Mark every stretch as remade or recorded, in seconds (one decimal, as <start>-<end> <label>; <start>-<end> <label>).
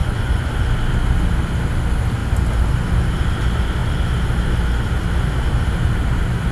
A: 0.0-0.5 remade; 0.5-6.5 recorded